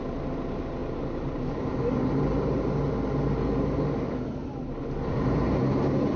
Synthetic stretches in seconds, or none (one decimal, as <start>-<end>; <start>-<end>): none